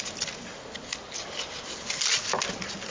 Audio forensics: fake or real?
real